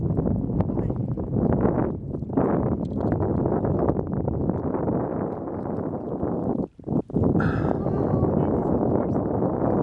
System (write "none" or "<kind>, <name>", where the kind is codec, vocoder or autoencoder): none